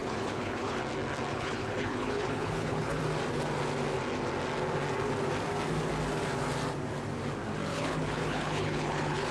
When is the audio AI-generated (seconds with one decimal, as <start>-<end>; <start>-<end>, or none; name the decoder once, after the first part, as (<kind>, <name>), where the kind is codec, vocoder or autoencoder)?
0.0-0.8 (codec, HILCodec); 1.3-3.0; 7.7-9.3